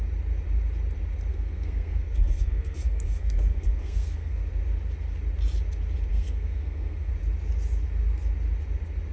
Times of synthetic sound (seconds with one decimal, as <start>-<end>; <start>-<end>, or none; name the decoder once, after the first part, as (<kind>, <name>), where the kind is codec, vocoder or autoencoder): 1.3-4.4 (codec, SNAC); 6.1-7.1

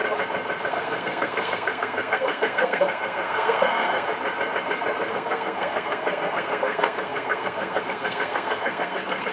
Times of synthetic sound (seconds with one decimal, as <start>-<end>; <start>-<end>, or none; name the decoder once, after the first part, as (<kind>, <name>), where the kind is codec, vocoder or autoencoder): 0.7-4.1 (codec, SNAC); 5.1-9.3

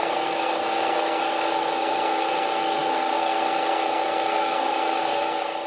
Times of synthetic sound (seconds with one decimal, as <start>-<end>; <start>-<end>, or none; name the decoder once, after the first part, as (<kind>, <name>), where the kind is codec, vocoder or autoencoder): 0.0-5.7 (codec, SNAC)

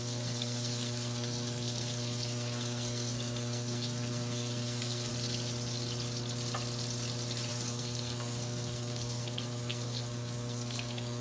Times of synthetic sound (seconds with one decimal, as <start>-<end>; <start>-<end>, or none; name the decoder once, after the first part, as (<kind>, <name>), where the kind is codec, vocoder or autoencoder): 0.0-5.1 (codec, SNAC); 7.5-11.2

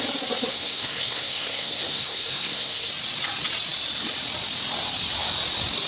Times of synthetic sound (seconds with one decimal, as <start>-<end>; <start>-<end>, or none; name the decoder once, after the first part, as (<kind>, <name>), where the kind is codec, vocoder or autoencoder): 0.5-2.9 (codec, SNAC)